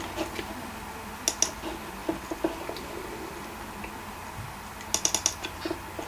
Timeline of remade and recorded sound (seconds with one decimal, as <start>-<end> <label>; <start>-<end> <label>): 0.0-6.1 recorded